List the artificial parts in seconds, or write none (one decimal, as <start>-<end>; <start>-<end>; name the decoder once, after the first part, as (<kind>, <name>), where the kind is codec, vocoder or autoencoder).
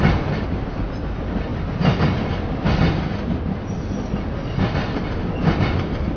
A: none